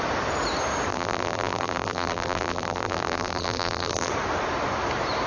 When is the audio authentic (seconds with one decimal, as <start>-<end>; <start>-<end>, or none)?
0.0-0.9; 4.1-5.3